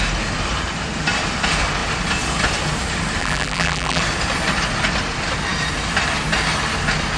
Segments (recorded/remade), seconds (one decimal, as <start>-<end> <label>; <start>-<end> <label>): 0.0-3.2 recorded; 3.2-4.0 remade; 4.0-7.2 recorded